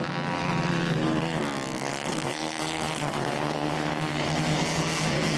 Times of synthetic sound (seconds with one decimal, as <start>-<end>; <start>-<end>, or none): 1.9-5.4